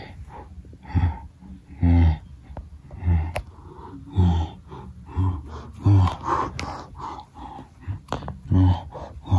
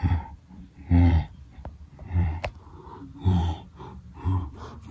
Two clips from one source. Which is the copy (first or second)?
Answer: second